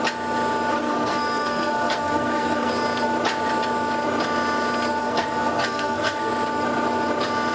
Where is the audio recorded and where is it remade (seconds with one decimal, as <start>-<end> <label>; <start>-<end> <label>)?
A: 0.0-0.7 recorded; 0.7-2.7 remade; 2.7-5.0 recorded; 5.0-6.3 remade; 6.3-7.5 recorded